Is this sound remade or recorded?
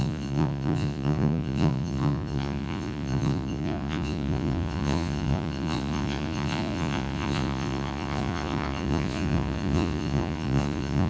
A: remade